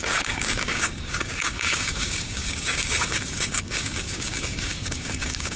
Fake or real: fake